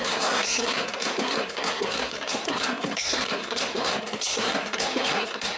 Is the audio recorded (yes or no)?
no